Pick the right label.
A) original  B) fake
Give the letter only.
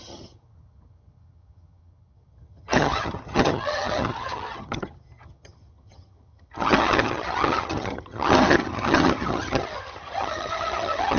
B